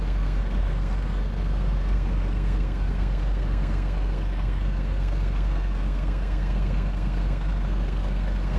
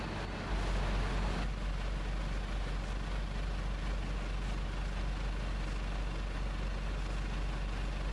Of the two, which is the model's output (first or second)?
first